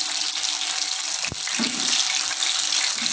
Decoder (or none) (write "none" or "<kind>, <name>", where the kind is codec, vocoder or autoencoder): none